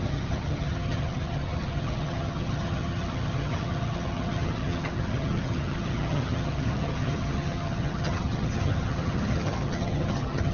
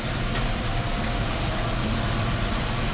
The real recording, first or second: second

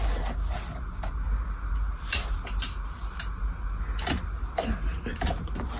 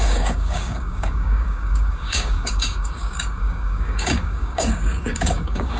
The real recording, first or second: first